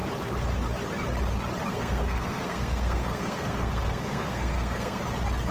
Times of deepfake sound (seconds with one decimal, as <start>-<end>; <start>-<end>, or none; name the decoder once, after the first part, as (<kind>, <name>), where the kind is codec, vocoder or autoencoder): 1.7-5.0 (codec, SNAC)